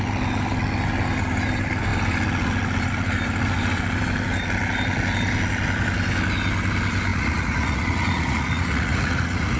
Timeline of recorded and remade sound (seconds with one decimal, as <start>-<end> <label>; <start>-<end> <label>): 0.0-7.1 recorded; 7.1-9.6 remade